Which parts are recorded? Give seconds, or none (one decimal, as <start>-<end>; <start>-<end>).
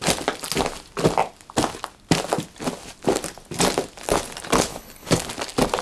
0.0-4.7; 5.2-5.8